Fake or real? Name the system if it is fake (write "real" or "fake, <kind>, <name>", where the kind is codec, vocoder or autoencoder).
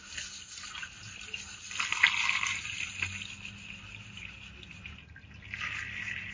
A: real